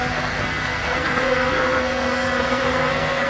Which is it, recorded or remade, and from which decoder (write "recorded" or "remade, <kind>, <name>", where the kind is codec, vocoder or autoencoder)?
remade, codec, SNAC